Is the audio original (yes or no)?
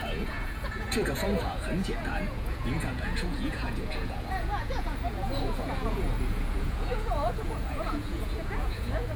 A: no